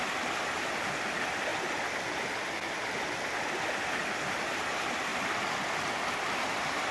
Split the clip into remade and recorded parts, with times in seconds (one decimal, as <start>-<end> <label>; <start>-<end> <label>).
0.0-6.9 recorded